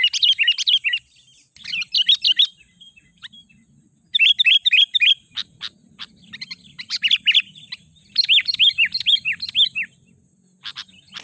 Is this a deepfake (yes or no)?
no